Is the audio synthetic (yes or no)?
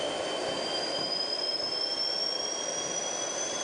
no